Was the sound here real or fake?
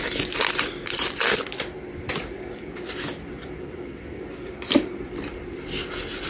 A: fake